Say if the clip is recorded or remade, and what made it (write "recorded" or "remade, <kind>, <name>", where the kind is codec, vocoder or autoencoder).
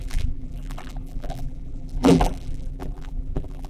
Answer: remade, vocoder, BigVGAN v2